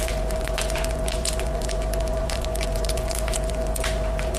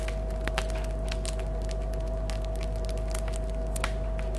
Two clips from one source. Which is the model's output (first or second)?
first